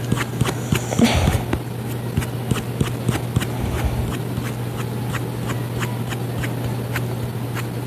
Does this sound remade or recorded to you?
recorded